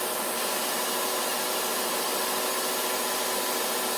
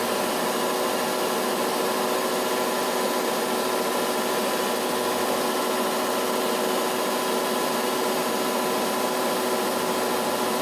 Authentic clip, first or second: second